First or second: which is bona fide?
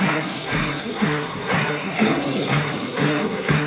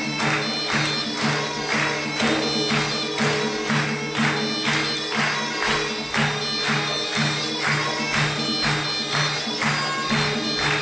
second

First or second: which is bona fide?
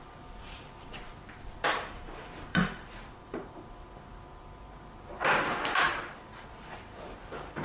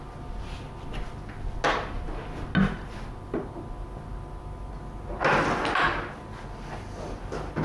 second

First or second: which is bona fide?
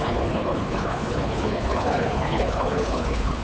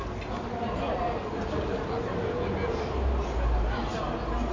second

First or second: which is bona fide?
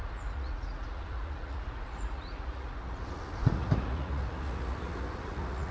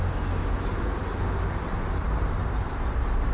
second